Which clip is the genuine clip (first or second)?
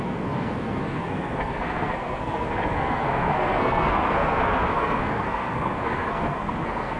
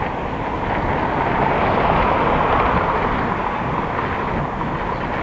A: second